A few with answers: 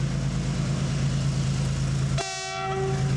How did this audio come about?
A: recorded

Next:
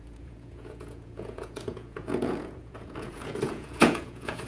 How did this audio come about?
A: remade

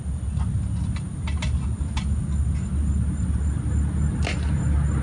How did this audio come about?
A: recorded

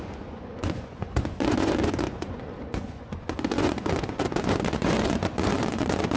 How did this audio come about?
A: remade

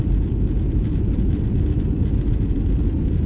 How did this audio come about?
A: recorded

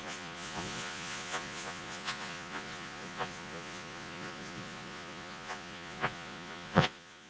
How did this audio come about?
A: remade